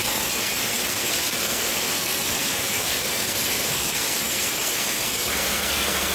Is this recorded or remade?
remade